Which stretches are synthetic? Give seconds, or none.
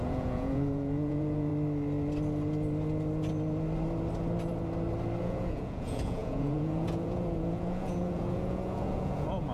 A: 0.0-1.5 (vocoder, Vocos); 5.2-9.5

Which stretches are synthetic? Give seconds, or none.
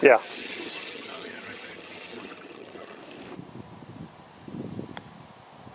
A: 0.4-3.0 (vocoder, HiFi-GAN)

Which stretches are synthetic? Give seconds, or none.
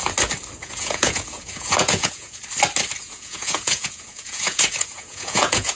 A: 0.6-2.4 (vocoder, Vocos); 3.0-5.8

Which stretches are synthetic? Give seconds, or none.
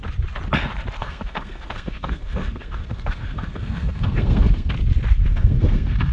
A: 1.0-4.7 (codec, SNAC); 5.3-6.1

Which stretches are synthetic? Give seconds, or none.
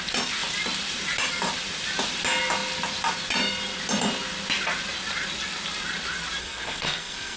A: 6.4-7.4 (codec, SNAC)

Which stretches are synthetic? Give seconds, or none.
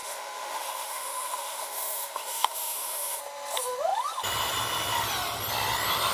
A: 0.0-3.2 (autoencoder, DAC-VAE)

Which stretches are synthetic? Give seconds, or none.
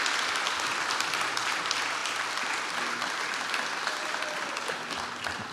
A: none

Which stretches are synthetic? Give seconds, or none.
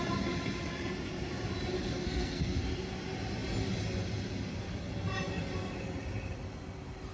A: 2.0-2.6 (codec, SNAC)